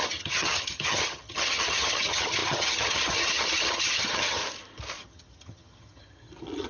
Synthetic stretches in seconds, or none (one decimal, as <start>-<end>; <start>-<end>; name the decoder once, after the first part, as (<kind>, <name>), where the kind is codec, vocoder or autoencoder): 0.0-4.4 (vocoder, HiFi-GAN); 5.0-6.7